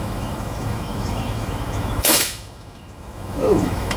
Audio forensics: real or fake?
fake